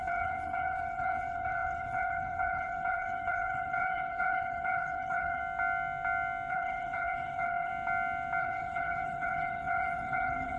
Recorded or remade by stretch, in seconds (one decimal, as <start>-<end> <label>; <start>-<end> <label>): 0.0-5.4 remade; 5.4-6.5 recorded; 6.5-7.7 remade; 7.7-8.4 recorded; 8.4-10.6 remade